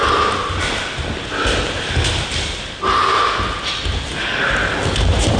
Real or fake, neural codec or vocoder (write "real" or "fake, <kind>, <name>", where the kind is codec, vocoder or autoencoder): real